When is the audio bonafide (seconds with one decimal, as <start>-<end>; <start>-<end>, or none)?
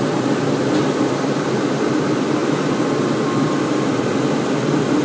0.0-5.0